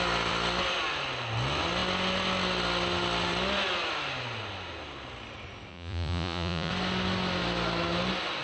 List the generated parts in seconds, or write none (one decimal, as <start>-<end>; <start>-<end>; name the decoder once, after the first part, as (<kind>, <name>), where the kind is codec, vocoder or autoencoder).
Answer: 5.7-6.7 (vocoder, Vocos)